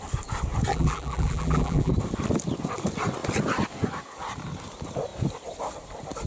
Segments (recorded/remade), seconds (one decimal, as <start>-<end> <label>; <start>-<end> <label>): 0.0-0.7 recorded; 0.7-1.9 remade; 1.9-6.3 recorded